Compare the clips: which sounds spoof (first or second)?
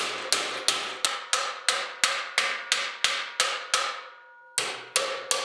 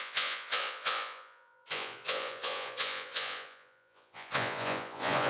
second